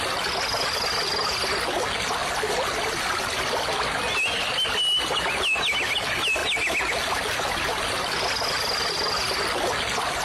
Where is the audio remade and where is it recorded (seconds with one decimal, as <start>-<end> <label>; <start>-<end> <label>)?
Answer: 0.0-10.2 recorded